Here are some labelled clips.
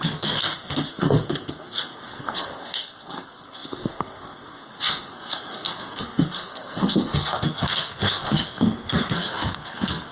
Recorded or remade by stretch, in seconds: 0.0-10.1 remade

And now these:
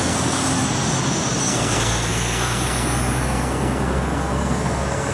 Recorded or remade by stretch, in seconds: 0.0-0.4 remade; 0.4-1.4 recorded; 1.4-5.1 remade

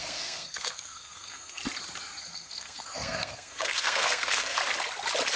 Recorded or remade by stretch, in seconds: 0.0-1.6 remade; 1.6-2.2 recorded; 2.2-4.6 remade; 4.6-5.4 recorded